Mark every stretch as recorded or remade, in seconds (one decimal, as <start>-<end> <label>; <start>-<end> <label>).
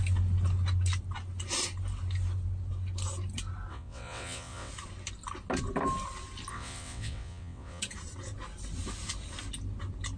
0.0-3.7 recorded; 3.7-4.7 remade; 4.7-6.5 recorded; 6.5-7.8 remade; 7.8-10.2 recorded